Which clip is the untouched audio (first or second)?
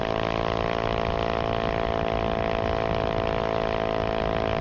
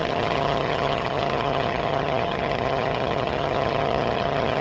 first